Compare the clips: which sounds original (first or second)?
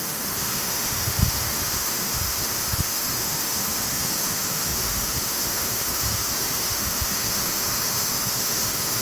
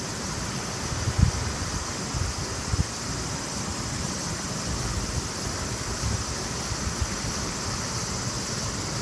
second